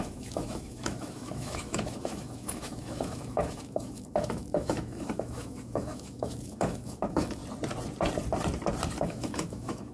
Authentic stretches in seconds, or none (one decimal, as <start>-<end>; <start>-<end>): 7.4-9.0